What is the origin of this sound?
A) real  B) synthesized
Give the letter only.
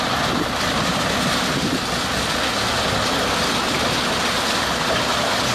A